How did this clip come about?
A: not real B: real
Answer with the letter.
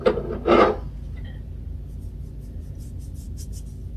B